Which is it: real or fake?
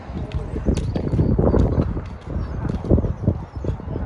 real